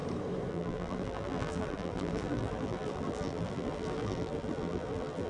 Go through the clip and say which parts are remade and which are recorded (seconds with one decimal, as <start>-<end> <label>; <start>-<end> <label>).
0.0-0.5 recorded; 0.5-5.3 remade